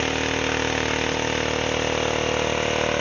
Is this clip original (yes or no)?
yes